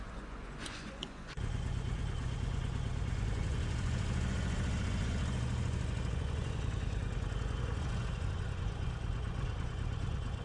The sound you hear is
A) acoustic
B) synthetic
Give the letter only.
B